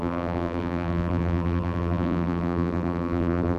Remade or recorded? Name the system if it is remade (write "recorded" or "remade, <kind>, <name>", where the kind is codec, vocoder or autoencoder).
remade, vocoder, BigVGAN v2